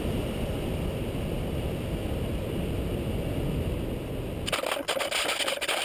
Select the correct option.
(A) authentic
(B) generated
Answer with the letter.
A